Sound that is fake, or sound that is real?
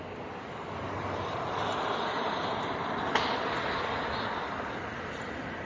real